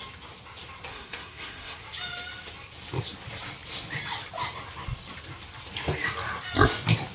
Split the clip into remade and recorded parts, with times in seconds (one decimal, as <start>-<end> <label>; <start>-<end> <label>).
0.0-0.9 recorded; 0.9-1.8 remade; 1.8-7.1 recorded